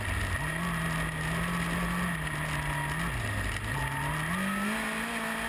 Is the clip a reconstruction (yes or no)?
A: no